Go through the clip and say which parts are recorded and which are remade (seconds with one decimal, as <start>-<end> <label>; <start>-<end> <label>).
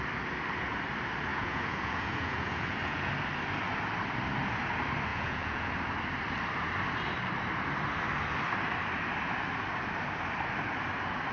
0.0-1.3 recorded; 1.3-3.1 remade; 3.1-5.1 recorded; 5.1-5.7 remade; 5.7-11.3 recorded